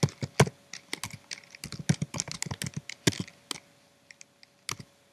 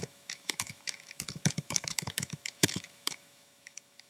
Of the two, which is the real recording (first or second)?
first